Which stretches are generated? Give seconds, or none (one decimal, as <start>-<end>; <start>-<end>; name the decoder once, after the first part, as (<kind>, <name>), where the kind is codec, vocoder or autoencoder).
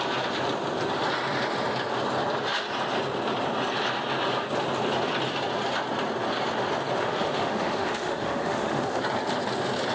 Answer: 7.0-9.0 (autoencoder, DAC-VAE)